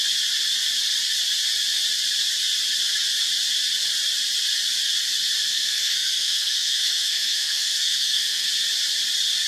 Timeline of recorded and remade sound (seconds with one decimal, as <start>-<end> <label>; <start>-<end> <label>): 0.0-5.4 recorded; 5.4-8.5 remade; 8.5-9.5 recorded